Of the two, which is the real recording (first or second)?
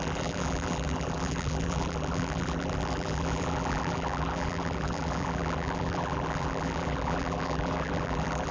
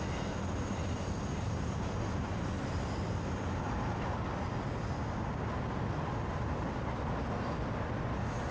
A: second